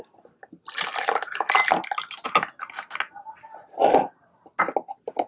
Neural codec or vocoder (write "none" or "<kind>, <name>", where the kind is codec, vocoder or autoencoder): none